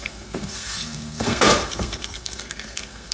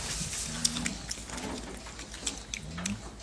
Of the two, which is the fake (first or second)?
first